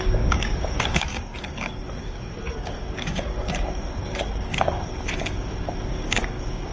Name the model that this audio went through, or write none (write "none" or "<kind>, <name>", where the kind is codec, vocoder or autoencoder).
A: codec, DAC